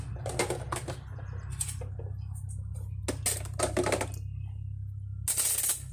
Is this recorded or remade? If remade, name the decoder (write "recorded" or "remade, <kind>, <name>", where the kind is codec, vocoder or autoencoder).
recorded